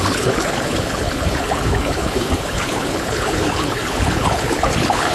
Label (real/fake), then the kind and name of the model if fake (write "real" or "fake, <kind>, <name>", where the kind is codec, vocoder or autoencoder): fake, codec, HILCodec